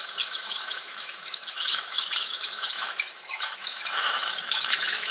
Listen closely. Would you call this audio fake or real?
fake